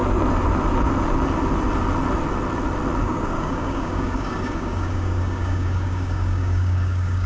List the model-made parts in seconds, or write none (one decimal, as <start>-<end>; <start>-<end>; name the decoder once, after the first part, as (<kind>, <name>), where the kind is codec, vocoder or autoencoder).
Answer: 3.0-7.3 (codec, DAC)